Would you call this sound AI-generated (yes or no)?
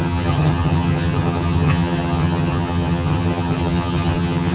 yes